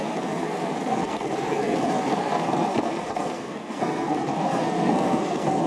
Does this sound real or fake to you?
fake